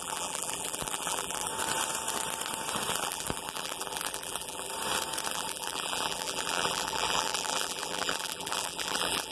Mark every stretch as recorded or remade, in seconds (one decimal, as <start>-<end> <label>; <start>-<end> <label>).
0.0-1.5 remade; 1.5-2.9 recorded; 2.9-4.7 remade; 4.7-5.3 recorded; 5.3-9.3 remade